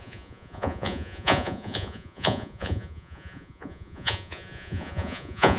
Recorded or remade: remade